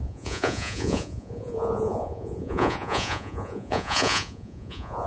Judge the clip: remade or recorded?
remade